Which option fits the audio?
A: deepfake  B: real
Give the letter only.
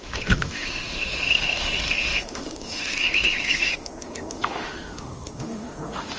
A